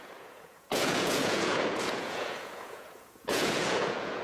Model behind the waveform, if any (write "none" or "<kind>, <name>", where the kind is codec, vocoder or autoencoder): vocoder, Vocos